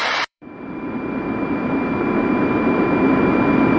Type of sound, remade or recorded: remade